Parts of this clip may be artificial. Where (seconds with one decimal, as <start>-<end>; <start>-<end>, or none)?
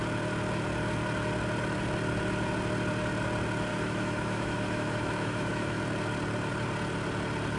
3.7-5.8